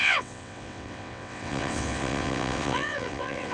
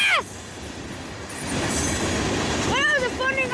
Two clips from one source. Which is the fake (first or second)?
first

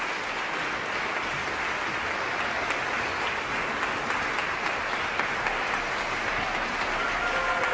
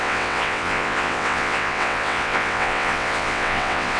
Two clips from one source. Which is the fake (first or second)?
second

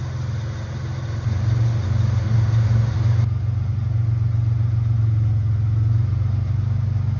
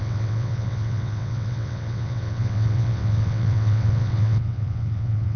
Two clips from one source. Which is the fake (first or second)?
second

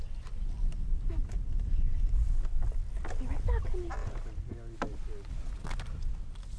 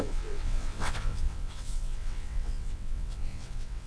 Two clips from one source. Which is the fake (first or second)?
second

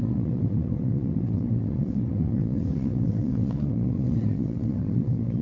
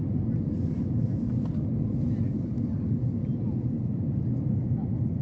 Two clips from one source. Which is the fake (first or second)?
first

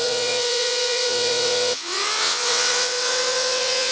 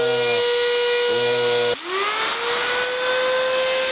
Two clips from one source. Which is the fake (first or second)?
first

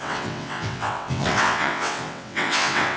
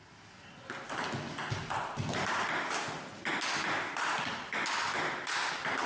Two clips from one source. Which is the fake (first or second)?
first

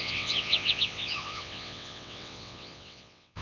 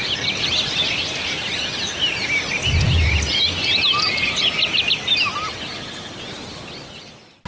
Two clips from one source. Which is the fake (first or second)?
first